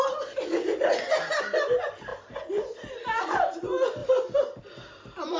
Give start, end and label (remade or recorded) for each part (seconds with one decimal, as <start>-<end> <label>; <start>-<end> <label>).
0.0-5.4 recorded